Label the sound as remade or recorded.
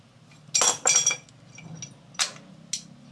recorded